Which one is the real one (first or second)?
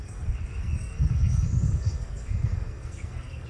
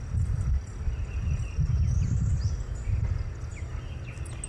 second